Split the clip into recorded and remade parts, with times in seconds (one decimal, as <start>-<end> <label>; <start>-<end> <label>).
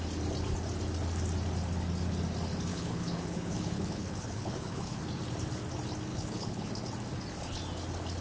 0.0-2.7 recorded; 2.7-5.0 remade; 5.0-6.1 recorded; 6.1-6.7 remade; 6.7-8.2 recorded